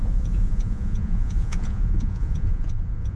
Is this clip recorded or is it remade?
remade